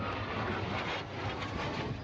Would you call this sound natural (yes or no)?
yes